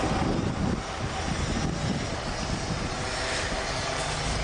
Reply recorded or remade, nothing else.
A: recorded